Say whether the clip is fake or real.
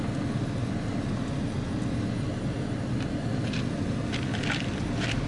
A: real